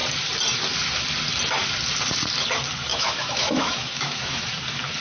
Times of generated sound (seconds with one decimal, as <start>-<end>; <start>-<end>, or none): 2.9-4.5